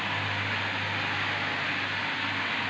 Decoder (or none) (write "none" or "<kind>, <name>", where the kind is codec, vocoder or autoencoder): none